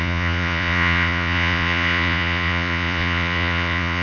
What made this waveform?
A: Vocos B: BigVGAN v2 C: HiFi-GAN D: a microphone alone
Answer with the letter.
A